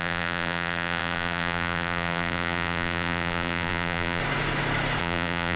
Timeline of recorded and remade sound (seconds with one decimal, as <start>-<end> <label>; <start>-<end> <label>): 0.0-4.2 remade; 4.2-5.0 recorded; 5.0-5.6 remade